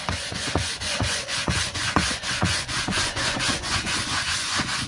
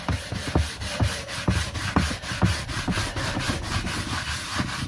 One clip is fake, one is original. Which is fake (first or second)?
first